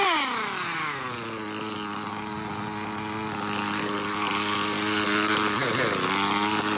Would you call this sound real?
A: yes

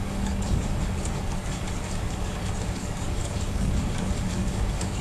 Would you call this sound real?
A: no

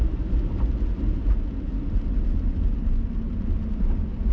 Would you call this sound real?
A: yes